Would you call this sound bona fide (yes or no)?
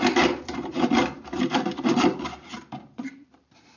no